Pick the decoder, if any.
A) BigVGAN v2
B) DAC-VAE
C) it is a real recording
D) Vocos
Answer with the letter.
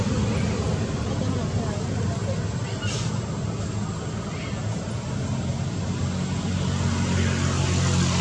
C